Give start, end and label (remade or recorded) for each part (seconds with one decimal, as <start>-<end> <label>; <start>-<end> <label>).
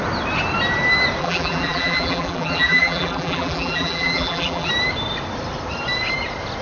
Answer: 0.0-1.2 recorded; 1.2-4.7 remade; 4.7-6.6 recorded